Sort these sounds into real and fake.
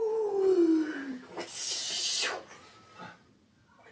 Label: real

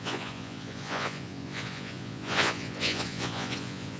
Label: fake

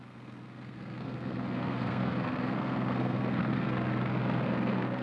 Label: fake